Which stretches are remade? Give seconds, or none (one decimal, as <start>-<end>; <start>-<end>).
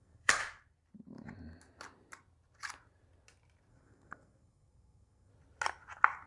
0.0-0.4; 3.7-5.3